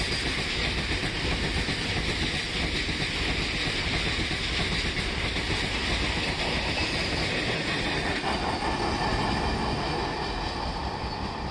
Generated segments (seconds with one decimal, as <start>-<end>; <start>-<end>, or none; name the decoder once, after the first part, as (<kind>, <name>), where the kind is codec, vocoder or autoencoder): none